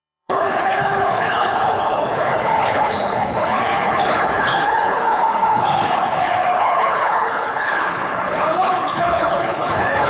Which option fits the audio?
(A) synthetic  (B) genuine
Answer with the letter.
A